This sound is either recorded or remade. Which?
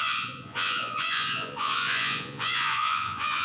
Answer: remade